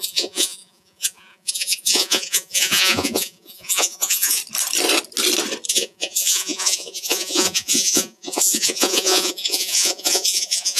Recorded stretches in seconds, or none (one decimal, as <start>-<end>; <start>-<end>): 4.4-5.7